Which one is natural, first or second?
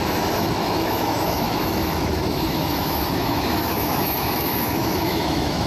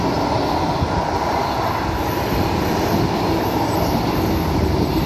second